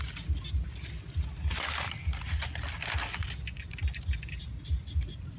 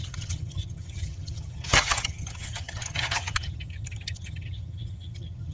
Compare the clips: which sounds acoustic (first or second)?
first